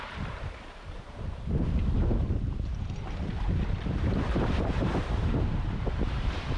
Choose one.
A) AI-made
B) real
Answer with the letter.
A